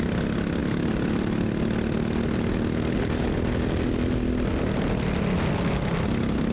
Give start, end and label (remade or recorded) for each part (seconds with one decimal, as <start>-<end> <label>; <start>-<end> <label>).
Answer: 0.0-6.5 recorded